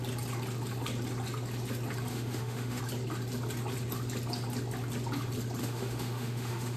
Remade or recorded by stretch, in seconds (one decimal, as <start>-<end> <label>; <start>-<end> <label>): 0.0-2.1 recorded; 2.1-2.8 remade; 2.8-5.6 recorded; 5.6-6.8 remade